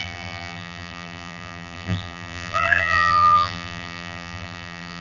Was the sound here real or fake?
fake